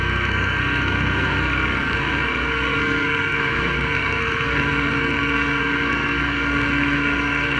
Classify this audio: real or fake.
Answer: fake